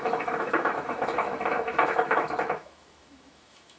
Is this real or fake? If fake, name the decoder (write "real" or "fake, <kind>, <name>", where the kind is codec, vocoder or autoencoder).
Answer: fake, autoencoder, DAC-VAE